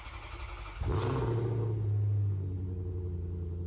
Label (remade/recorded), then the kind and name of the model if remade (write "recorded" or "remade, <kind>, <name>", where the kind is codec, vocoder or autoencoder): recorded